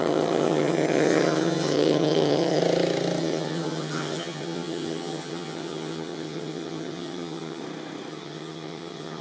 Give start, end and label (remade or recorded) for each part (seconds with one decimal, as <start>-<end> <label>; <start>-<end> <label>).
0.0-2.6 remade; 2.6-3.2 recorded; 3.2-7.6 remade; 7.6-8.1 recorded; 8.1-9.2 remade